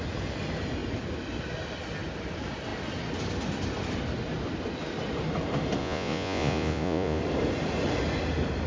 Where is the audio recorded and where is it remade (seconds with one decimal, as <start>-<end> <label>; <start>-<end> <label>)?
0.0-5.8 recorded; 5.8-7.2 remade; 7.2-8.7 recorded